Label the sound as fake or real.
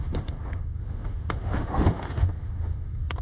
fake